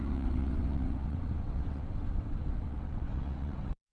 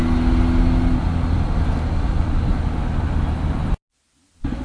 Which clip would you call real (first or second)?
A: second